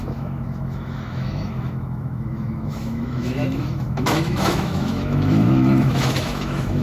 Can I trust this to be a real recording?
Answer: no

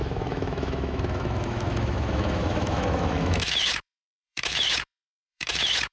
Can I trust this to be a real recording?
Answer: no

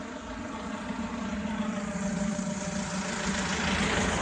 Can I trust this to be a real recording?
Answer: yes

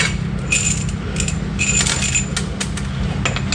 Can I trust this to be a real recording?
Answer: yes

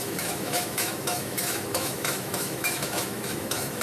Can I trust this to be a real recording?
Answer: no